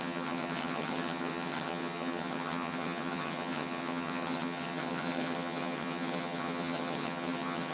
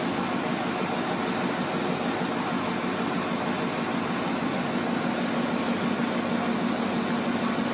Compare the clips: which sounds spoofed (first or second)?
first